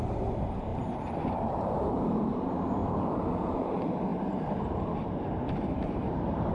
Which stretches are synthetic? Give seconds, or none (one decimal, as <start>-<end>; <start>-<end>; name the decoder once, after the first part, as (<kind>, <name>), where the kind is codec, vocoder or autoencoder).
0.0-2.8 (vocoder, BigVGAN v2); 3.5-6.5